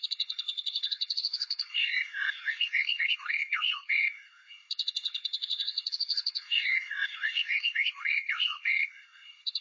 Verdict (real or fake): fake